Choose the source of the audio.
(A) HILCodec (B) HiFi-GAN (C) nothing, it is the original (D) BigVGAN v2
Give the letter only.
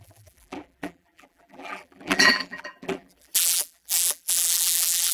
D